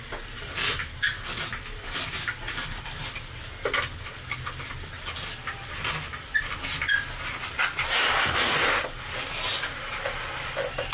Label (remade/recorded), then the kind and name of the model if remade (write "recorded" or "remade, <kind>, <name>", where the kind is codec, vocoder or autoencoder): recorded